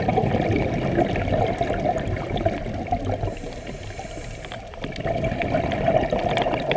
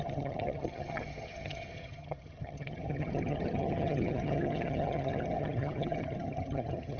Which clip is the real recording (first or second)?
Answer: first